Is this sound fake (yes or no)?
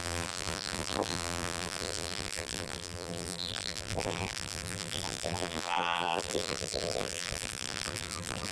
yes